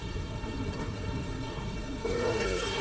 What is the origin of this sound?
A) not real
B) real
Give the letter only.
A